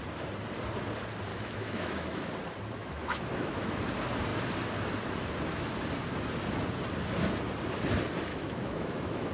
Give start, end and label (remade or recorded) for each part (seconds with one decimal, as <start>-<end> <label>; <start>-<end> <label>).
0.0-1.3 recorded; 1.3-2.3 remade; 2.3-2.8 recorded; 2.8-3.8 remade; 3.8-8.3 recorded; 8.3-9.3 remade